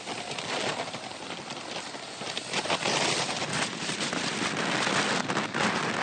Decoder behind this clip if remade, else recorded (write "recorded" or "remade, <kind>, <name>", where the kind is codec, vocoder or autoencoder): recorded